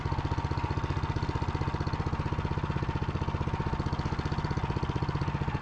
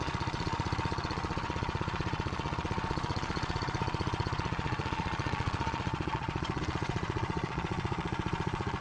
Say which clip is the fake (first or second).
second